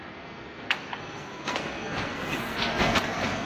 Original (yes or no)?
no